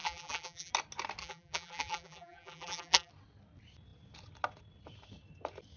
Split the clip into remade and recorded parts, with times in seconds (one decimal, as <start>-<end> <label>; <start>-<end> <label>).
0.0-0.7 remade; 0.7-1.2 recorded; 1.2-3.1 remade; 3.1-5.8 recorded